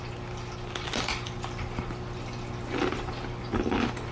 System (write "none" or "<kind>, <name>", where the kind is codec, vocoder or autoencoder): none